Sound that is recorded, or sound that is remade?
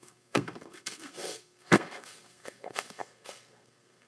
remade